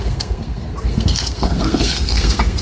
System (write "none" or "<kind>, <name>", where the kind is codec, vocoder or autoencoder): codec, SNAC